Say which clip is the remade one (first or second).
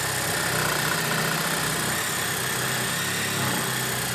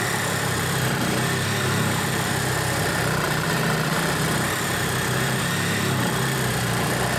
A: second